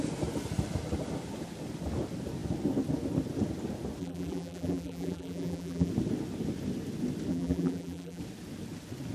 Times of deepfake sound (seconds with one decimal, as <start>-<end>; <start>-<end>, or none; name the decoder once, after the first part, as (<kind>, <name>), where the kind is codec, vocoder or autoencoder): 4.0-5.9 (vocoder, BigVGAN v2); 7.3-8.2